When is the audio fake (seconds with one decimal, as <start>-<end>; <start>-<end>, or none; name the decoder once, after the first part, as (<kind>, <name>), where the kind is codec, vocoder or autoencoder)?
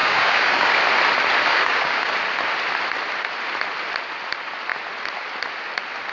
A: 0.0-0.8 (codec, DAC); 1.5-2.1